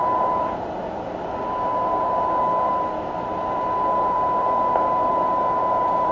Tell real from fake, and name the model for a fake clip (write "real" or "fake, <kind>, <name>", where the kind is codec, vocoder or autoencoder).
fake, vocoder, BigVGAN v2